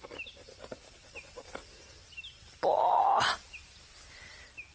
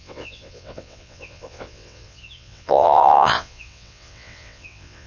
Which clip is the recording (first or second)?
first